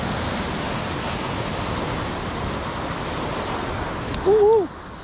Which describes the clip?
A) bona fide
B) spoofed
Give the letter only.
A